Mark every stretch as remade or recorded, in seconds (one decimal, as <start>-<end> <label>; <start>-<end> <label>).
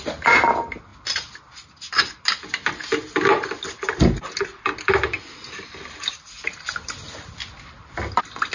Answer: 0.0-8.5 recorded